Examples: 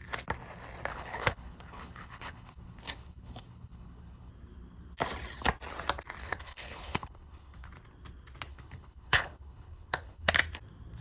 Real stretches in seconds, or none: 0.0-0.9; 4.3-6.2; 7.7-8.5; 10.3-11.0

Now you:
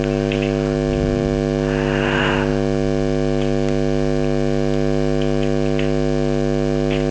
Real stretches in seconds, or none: 0.0-7.1

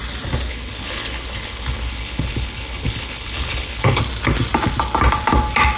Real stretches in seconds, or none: 0.0-0.5; 4.0-5.8

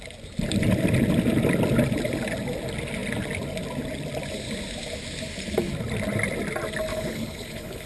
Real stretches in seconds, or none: 0.0-6.9

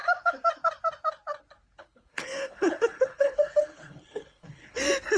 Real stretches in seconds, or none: 0.0-1.8; 4.8-5.2